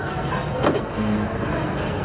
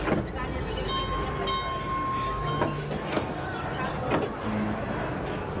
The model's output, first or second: first